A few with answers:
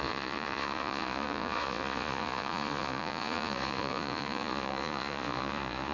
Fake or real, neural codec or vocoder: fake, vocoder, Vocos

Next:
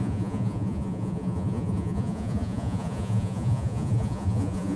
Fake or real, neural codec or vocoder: fake, vocoder, Vocos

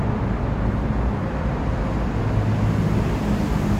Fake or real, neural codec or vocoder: real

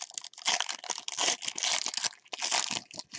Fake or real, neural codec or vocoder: real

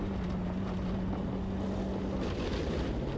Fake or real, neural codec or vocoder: real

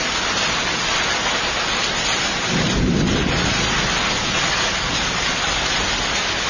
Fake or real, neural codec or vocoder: real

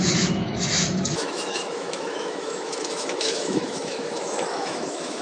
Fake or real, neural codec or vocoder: fake, autoencoder, DAC-VAE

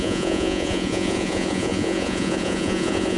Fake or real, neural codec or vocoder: fake, vocoder, Vocos